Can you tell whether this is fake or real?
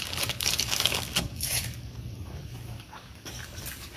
fake